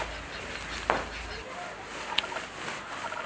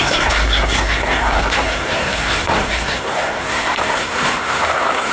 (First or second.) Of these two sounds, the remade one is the second